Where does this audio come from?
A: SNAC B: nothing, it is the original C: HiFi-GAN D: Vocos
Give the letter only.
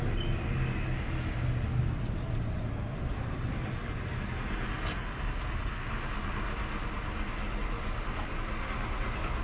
B